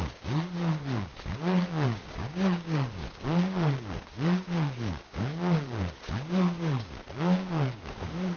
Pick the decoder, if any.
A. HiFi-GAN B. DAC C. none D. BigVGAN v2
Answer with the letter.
B